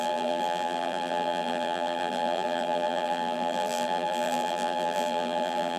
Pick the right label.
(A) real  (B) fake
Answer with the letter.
B